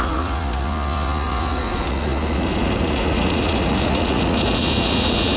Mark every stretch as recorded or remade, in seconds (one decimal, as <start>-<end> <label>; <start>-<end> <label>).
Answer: 0.0-5.4 remade